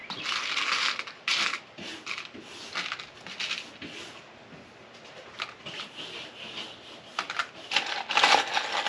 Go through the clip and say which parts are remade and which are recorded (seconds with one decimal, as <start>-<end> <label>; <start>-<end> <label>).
0.0-1.3 recorded; 1.3-2.4 remade; 2.4-7.1 recorded; 7.1-8.1 remade; 8.1-8.9 recorded

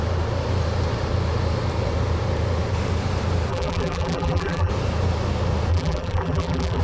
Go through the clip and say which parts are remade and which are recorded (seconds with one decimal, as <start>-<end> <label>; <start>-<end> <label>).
0.0-3.5 recorded; 3.5-4.7 remade; 4.7-5.7 recorded; 5.7-6.8 remade

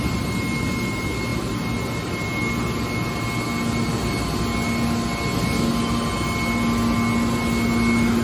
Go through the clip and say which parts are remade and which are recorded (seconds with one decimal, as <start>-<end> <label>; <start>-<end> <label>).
0.0-8.2 recorded

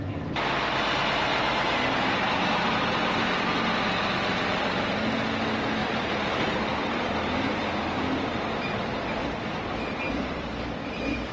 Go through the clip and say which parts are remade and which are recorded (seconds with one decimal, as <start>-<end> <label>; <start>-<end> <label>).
0.0-1.3 recorded; 1.3-3.5 remade; 3.5-5.8 recorded; 5.8-6.4 remade; 6.4-8.3 recorded; 8.3-11.3 remade

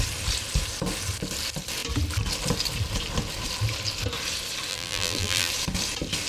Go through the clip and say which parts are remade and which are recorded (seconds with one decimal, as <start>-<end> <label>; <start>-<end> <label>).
0.0-4.7 recorded; 4.7-5.5 remade; 5.5-6.3 recorded

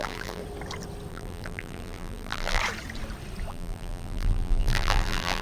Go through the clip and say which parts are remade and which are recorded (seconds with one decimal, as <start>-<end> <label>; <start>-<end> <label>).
0.0-0.4 remade; 0.4-1.1 recorded; 1.1-2.6 remade; 2.6-3.5 recorded; 3.5-5.4 remade

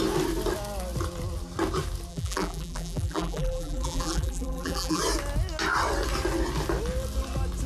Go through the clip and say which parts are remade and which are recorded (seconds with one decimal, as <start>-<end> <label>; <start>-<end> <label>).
0.0-2.1 recorded; 2.1-5.0 remade; 5.0-7.7 recorded

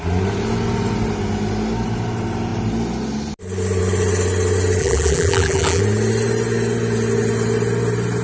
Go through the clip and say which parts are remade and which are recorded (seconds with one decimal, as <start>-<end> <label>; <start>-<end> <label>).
0.0-4.8 recorded; 4.8-5.8 remade; 5.8-8.2 recorded